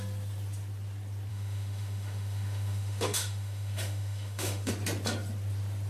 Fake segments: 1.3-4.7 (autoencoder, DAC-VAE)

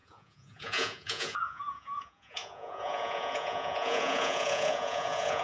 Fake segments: 0.0-5.4 (vocoder, Vocos)

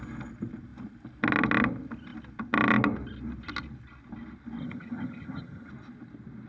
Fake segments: 4.6-5.7 (vocoder, HiFi-GAN)

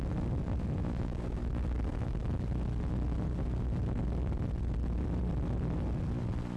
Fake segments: none

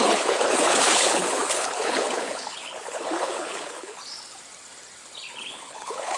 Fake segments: 0.0-4.0 (codec, HILCodec); 5.3-6.2

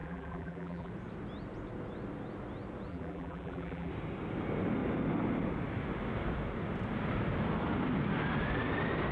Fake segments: 0.0-0.9 (vocoder, BigVGAN v2); 2.9-3.9

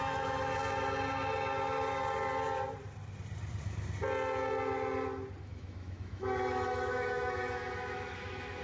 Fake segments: 0.0-0.5 (autoencoder, DAC-VAE); 5.4-8.6

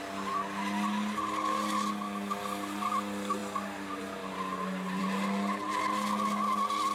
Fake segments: none